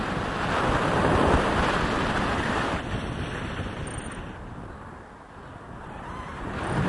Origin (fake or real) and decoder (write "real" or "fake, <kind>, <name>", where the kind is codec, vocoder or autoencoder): real